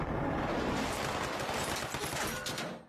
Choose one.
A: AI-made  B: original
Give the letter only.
B